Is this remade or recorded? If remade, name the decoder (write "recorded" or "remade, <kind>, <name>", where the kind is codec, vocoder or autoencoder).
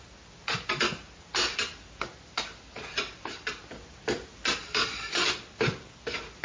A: recorded